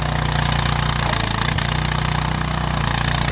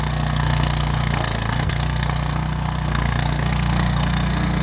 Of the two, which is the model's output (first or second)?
second